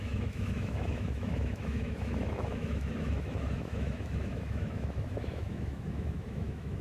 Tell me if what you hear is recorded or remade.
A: remade